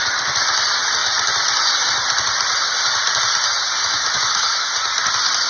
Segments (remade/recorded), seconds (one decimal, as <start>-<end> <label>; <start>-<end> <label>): 0.0-3.8 recorded; 3.8-4.7 remade; 4.7-5.5 recorded